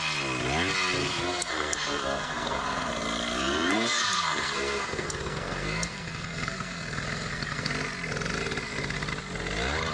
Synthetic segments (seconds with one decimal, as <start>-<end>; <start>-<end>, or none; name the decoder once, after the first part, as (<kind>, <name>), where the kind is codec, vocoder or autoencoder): 1.0-2.9 (codec, SNAC); 3.4-7.7